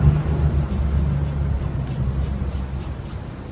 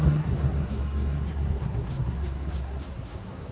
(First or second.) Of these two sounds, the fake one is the second